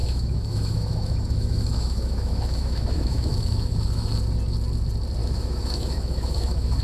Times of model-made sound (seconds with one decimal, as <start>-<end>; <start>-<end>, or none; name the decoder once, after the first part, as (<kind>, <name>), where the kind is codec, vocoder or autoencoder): 0.0-4.1 (autoencoder, DAC-VAE); 5.2-6.8